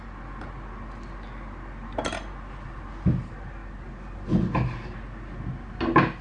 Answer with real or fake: real